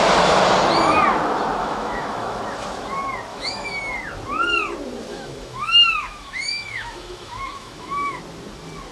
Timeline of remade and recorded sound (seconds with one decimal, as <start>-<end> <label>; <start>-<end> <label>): 0.0-1.6 recorded; 1.6-2.4 remade; 2.4-3.3 recorded; 3.3-3.8 remade; 3.8-5.1 recorded; 5.1-8.2 remade; 8.2-8.9 recorded